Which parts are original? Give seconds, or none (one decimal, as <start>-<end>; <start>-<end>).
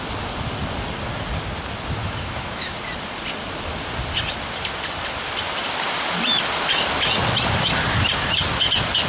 0.0-2.0; 2.7-9.1